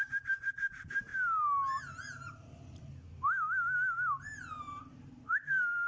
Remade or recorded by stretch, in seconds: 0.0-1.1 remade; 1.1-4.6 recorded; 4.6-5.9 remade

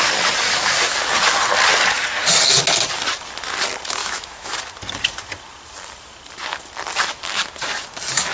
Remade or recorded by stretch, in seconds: 0.0-4.0 recorded; 4.0-4.5 remade; 4.5-8.3 recorded